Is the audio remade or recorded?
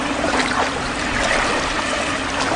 recorded